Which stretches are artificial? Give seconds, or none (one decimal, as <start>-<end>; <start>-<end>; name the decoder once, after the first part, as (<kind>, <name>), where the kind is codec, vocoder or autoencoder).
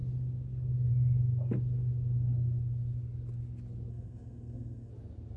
3.9-4.9 (codec, SNAC)